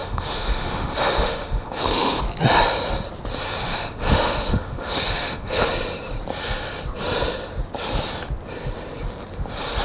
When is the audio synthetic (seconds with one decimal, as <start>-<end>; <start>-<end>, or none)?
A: 0.0-2.2; 3.7-5.7